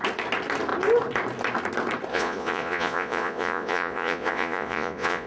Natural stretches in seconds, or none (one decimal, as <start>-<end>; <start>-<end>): 0.0-2.1